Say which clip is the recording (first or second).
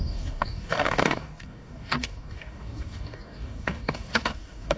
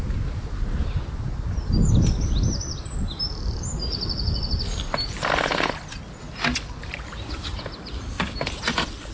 second